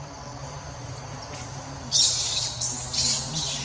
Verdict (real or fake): real